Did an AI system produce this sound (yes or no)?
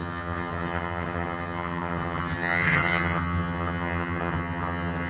yes